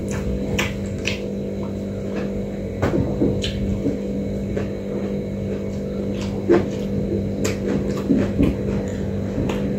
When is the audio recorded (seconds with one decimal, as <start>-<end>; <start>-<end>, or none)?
0.0-9.8